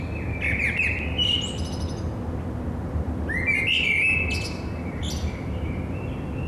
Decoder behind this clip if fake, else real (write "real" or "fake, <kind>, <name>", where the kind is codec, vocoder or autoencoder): real